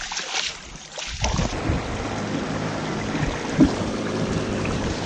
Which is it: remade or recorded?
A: recorded